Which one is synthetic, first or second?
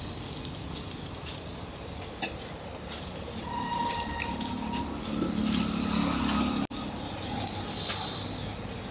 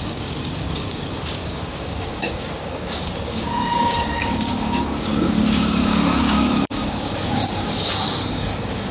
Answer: second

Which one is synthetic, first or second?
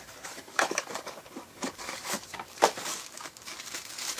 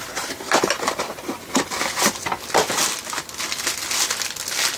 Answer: first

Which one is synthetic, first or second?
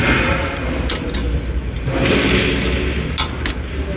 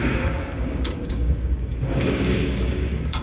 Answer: second